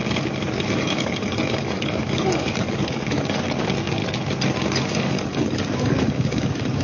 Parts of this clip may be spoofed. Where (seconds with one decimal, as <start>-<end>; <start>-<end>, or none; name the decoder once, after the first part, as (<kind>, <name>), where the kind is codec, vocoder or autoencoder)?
0.8-4.0 (codec, DAC); 4.9-6.8